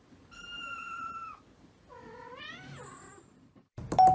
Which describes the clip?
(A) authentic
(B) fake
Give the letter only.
A